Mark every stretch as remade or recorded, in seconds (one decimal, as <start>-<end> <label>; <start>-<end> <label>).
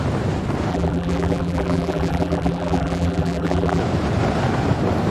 0.0-0.7 recorded; 0.7-3.8 remade; 3.8-5.1 recorded